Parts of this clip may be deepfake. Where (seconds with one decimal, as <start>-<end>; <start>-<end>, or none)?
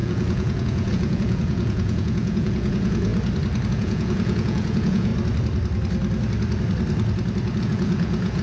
0.0-3.1; 3.7-5.1; 7.6-8.4